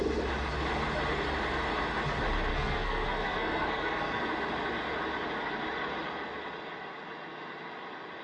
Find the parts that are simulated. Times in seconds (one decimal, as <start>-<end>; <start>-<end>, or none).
2.5-4.2